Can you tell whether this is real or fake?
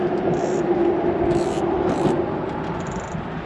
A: real